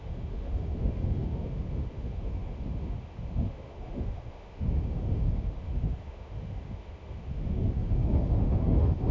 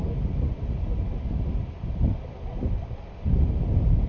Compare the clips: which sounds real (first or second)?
second